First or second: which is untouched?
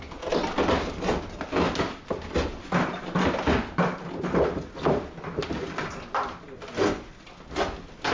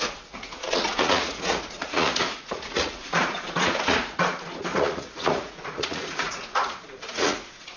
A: first